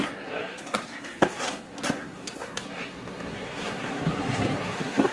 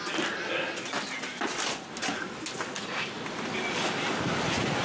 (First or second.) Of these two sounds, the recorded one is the second